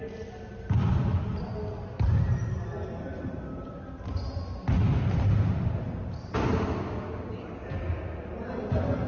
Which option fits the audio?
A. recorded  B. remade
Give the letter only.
A